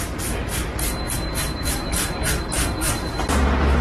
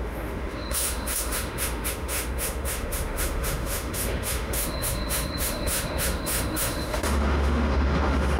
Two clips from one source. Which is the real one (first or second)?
first